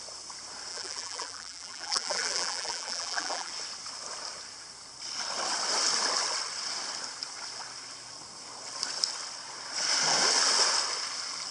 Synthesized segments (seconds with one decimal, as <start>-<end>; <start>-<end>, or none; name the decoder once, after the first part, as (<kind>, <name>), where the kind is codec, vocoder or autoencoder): 0.7-3.5 (vocoder, BigVGAN v2)